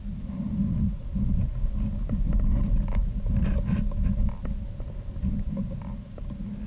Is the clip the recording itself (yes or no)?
yes